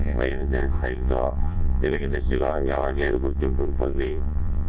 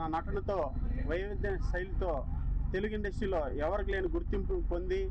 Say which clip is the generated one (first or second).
first